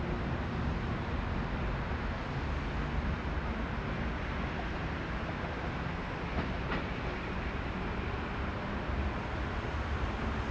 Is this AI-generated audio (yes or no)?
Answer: no